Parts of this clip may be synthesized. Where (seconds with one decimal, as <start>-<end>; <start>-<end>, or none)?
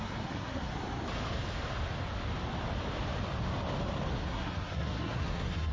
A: 0.0-0.7; 4.1-5.7